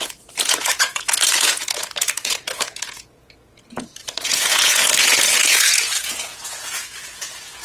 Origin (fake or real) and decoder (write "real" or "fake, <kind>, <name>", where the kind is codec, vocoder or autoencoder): fake, vocoder, Vocos